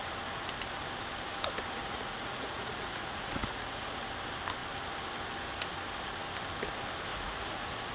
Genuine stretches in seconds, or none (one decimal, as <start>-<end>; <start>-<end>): 0.0-1.8; 4.1-7.1